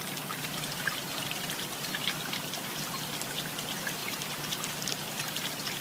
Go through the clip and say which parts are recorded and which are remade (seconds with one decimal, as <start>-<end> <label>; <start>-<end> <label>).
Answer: 0.0-4.0 recorded; 4.0-4.7 remade; 4.7-5.8 recorded